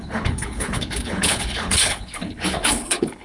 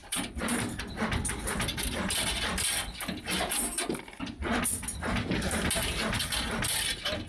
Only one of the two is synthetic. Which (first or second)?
first